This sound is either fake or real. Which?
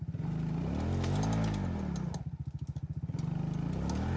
real